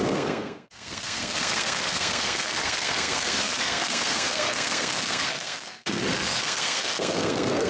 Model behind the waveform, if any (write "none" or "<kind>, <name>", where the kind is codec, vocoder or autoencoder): codec, SNAC